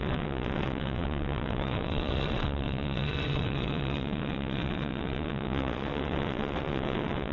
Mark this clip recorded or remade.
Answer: remade